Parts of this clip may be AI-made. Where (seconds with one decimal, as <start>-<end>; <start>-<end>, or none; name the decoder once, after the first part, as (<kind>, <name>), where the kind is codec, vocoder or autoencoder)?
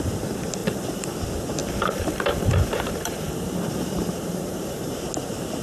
0.6-1.2 (vocoder, BigVGAN v2); 1.6-5.0